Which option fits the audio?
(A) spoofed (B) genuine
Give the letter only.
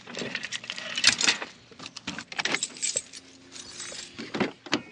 B